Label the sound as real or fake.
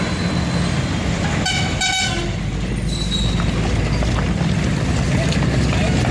real